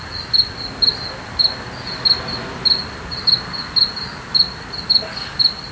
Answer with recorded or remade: recorded